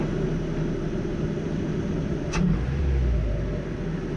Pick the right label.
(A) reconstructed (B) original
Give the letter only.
B